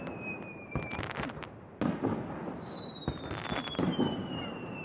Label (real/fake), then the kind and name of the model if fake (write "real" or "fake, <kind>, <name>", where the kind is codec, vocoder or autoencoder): real